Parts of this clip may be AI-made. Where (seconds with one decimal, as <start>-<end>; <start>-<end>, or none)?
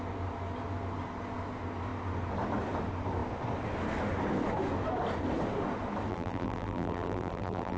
6.1-7.8